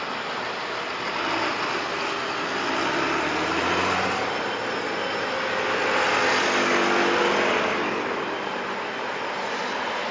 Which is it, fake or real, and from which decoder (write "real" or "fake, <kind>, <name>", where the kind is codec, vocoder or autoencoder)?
real